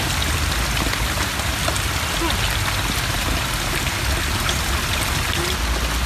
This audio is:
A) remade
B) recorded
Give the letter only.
B